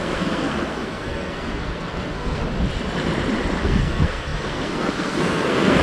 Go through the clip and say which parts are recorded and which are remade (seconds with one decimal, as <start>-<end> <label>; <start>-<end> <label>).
0.0-2.4 remade; 2.4-3.6 recorded; 3.6-5.8 remade